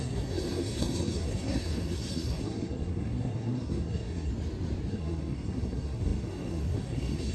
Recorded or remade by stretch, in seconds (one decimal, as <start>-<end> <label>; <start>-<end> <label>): 0.0-4.3 remade; 4.3-4.9 recorded; 4.9-7.3 remade